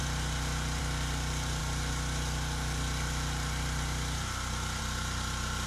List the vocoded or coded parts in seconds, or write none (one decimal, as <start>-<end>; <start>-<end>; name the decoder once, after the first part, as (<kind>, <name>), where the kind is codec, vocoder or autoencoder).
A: none